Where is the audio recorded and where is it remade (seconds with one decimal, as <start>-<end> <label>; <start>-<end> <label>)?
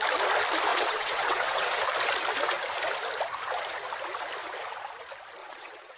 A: 0.0-0.7 recorded; 0.7-1.8 remade; 1.8-5.4 recorded; 5.4-6.0 remade